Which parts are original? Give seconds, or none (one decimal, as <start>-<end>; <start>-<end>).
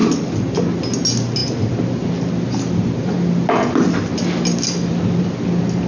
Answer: 0.0-5.9